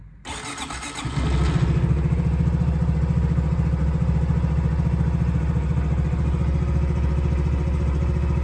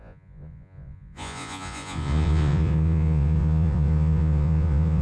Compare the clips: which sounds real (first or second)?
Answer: first